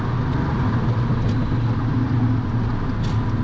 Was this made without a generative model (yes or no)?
yes